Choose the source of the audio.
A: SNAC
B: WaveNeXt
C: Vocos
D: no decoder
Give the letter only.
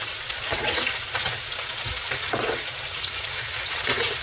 B